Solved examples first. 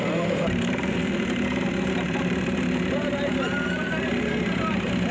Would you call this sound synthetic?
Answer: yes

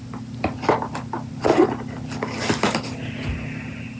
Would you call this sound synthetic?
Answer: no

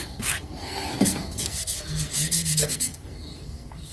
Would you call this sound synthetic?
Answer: yes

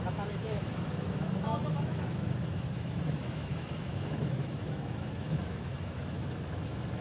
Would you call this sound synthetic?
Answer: yes